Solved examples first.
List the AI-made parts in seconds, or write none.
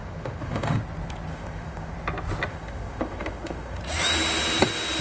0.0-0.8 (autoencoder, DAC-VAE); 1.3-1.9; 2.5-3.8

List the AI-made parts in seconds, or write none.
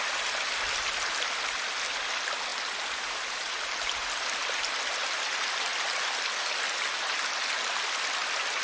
none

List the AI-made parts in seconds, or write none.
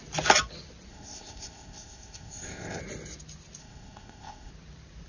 0.9-2.8 (codec, ZipCodec); 3.6-4.5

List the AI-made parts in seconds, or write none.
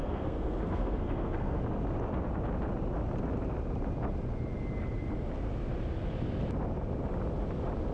0.0-1.6 (codec, SNAC)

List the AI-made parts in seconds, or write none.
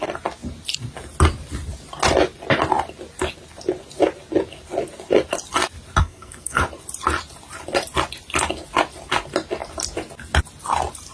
6.0-6.6 (codec, SNAC)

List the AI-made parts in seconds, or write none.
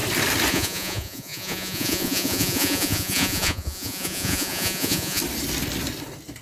0.5-5.2 (vocoder, Vocos)